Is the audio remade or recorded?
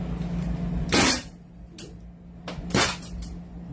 recorded